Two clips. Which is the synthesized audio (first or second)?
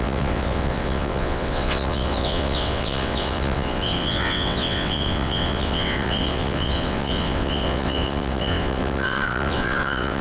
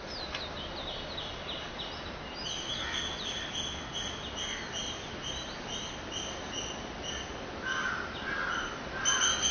first